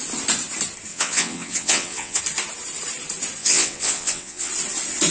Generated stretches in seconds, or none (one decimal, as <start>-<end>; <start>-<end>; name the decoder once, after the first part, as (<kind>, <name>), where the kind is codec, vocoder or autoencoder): 0.9-2.2 (vocoder, WaveNeXt); 3.4-4.5